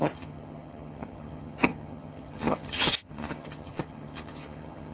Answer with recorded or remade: remade